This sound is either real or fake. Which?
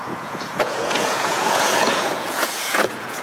fake